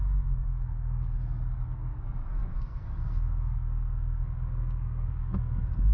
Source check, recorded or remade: remade